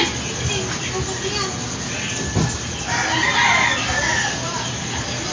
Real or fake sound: real